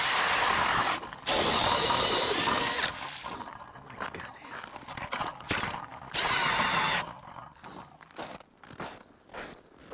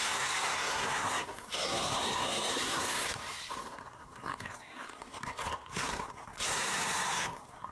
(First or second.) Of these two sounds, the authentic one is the first